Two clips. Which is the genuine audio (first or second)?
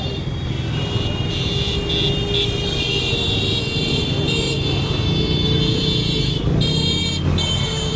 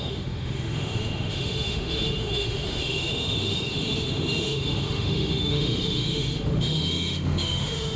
first